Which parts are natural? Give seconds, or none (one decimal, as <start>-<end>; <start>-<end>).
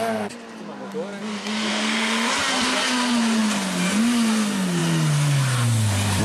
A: 0.0-1.7; 2.3-6.2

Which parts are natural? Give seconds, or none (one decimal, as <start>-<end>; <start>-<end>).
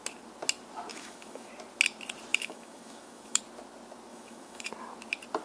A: 0.0-0.9; 1.5-2.3; 3.4-4.1; 4.7-5.4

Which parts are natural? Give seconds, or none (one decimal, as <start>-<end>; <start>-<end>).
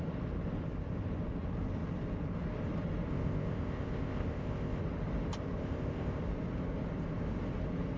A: 0.0-3.1; 4.8-5.6; 6.2-8.0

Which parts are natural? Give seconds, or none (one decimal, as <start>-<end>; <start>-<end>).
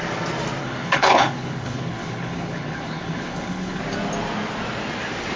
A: 0.0-0.6; 3.8-5.4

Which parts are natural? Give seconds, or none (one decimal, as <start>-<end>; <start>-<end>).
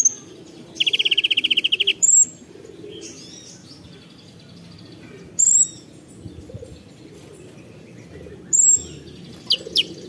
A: 0.0-10.1